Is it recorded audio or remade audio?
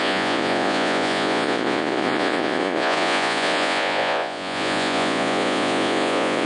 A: remade